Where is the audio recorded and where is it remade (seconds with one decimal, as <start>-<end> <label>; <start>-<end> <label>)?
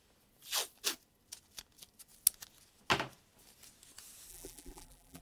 0.0-4.3 recorded; 4.3-5.2 remade